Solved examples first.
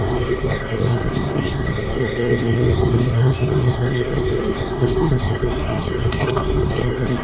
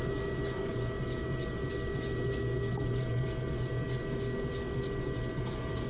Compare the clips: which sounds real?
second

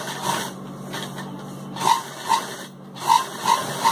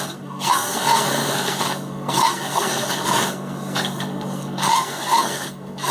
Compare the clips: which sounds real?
first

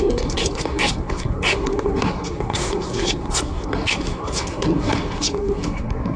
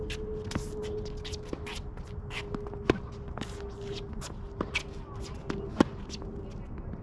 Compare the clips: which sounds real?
second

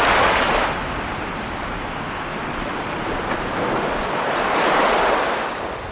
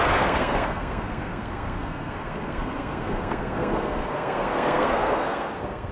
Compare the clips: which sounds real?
first